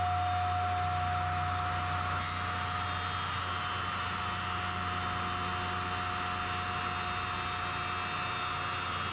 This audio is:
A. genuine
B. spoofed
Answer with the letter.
A